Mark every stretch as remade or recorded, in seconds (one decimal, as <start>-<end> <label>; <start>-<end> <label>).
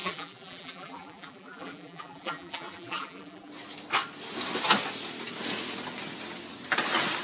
0.0-3.5 remade; 3.5-7.2 recorded